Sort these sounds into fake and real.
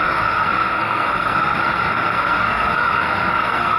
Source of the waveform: fake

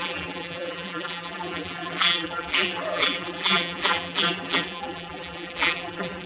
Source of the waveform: fake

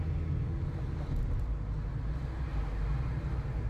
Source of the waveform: real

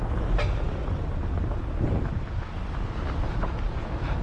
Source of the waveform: real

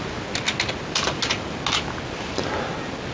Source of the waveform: real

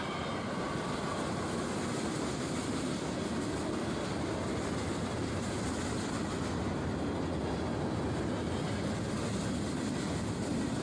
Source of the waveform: real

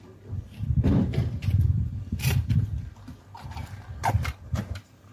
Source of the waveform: fake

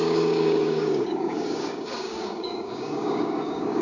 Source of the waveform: fake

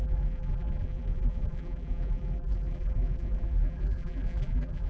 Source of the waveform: fake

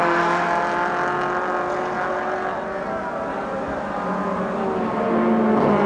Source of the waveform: real